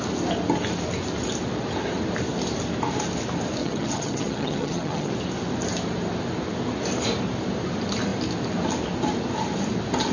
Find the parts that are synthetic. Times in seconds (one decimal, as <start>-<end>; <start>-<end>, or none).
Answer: 3.6-5.1